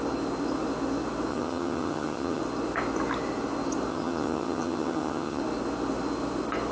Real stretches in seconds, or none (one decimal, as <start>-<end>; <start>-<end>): 0.0-1.3; 2.4-3.9; 5.4-6.7